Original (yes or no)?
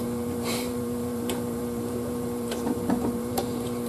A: no